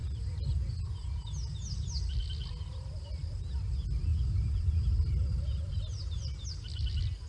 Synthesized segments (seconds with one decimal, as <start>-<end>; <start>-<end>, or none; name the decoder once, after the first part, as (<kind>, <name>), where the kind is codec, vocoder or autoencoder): 4.1-4.7 (vocoder, BigVGAN v2)